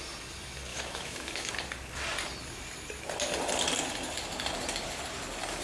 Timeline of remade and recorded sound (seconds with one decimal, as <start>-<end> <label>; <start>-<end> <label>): 0.0-0.7 recorded; 0.7-1.5 remade; 1.5-5.6 recorded